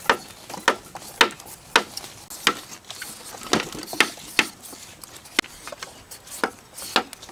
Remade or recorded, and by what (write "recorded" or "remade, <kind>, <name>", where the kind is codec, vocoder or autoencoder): recorded